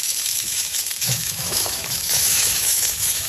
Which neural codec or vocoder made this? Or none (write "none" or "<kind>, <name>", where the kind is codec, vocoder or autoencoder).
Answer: autoencoder, DAC-VAE